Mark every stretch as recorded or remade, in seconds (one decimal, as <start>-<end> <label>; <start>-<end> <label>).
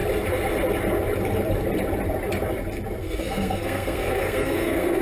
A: 0.0-3.0 recorded; 3.0-5.0 remade